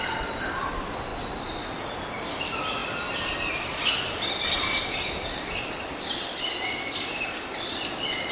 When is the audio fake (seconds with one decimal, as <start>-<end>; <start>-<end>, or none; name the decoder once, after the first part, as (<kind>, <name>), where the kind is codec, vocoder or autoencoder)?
0.0-1.1 (vocoder, BigVGAN v2); 2.2-8.3